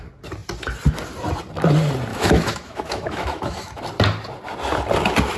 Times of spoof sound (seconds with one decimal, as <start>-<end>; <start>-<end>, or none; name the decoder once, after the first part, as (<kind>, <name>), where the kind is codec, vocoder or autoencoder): 2.1-3.8 (autoencoder, DAC-VAE)